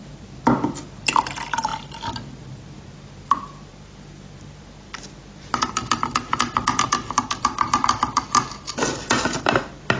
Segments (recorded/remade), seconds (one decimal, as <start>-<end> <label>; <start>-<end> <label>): 0.0-0.9 remade; 0.9-1.7 recorded; 1.7-6.9 remade; 6.9-10.0 recorded